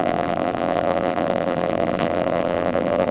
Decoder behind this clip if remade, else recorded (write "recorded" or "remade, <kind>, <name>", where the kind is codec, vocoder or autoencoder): remade, vocoder, BigVGAN v2